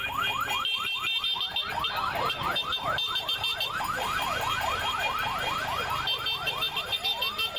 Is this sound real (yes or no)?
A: yes